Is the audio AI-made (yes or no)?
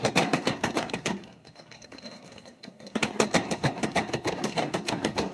yes